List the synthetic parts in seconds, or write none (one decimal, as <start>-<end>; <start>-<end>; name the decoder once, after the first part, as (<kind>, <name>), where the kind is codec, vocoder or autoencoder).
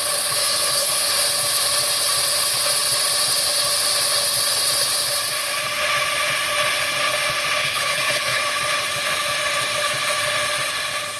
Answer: 0.4-1.1 (codec, HILCodec); 7.6-8.4